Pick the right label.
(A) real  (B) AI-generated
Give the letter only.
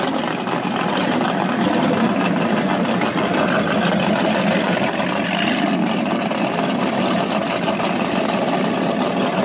A